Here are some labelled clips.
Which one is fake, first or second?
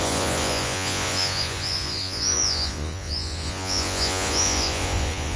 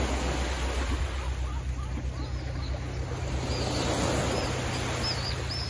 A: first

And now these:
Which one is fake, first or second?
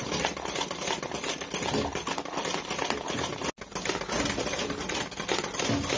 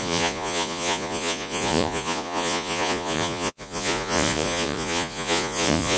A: second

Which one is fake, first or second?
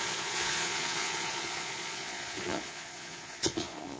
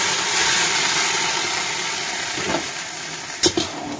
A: first